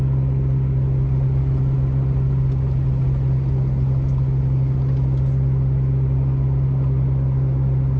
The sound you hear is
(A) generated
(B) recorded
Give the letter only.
B